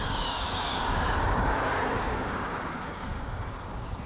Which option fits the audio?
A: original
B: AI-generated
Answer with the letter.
B